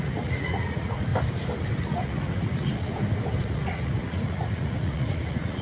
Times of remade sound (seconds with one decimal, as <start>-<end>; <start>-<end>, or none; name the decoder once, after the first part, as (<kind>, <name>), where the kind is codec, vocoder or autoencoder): 0.0-1.1 (vocoder, Vocos); 1.8-2.9; 3.4-5.6

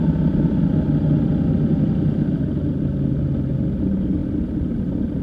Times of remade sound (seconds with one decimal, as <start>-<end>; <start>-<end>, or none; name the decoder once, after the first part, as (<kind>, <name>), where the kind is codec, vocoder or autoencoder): none

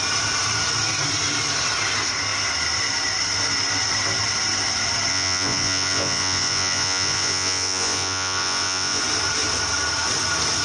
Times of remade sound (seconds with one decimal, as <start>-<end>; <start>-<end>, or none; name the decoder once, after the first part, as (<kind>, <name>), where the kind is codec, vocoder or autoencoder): 5.1-9.0 (vocoder, Vocos)

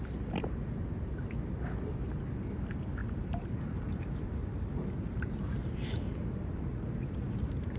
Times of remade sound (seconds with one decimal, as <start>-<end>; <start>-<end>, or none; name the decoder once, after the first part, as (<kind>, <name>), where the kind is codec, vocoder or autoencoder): 3.0-7.8 (vocoder, BigVGAN v2)

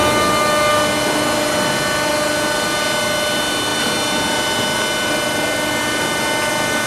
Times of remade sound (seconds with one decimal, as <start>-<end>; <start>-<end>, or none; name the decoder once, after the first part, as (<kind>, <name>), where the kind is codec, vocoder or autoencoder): none

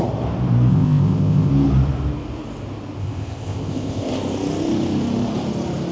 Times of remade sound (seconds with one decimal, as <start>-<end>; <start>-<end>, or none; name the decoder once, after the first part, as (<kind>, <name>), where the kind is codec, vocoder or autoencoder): 0.7-1.5 (codec, ZipCodec); 3.0-4.1